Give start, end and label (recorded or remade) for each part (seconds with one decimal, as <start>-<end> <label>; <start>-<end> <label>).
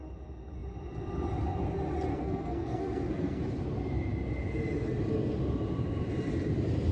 0.0-2.1 recorded; 2.1-3.4 remade; 3.4-6.9 recorded